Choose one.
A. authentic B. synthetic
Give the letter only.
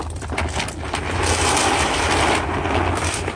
A